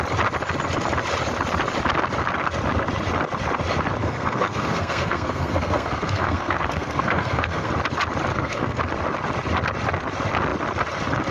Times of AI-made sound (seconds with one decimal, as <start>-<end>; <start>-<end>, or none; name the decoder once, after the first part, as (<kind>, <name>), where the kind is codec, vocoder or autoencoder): 4.0-7.7 (codec, SNAC); 8.3-8.8